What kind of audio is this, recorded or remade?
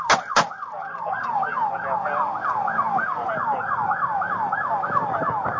recorded